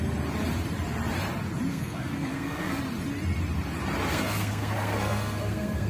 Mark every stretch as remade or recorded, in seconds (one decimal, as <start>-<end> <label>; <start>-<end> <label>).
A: 0.0-1.7 recorded; 1.7-2.8 remade; 2.8-4.1 recorded; 4.1-5.9 remade